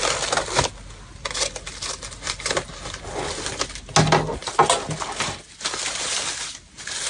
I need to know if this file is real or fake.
real